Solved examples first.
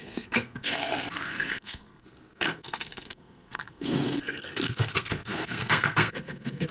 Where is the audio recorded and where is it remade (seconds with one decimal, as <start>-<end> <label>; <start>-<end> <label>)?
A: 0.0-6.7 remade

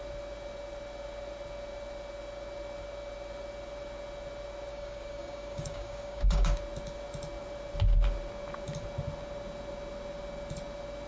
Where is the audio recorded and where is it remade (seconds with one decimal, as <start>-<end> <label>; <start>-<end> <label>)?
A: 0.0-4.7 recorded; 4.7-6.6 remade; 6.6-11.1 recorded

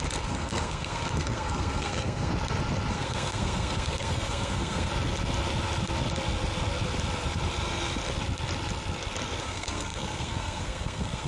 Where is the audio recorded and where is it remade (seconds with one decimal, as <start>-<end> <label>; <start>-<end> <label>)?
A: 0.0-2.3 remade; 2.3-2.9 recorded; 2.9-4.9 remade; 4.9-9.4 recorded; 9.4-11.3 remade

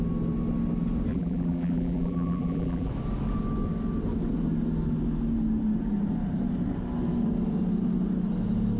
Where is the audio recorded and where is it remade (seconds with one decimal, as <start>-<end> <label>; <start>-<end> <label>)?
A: 0.0-1.1 recorded; 1.1-2.9 remade; 2.9-8.8 recorded